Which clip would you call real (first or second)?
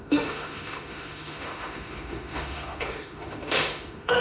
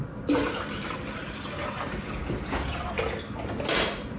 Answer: second